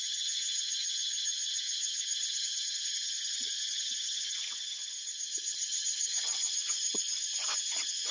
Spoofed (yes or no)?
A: yes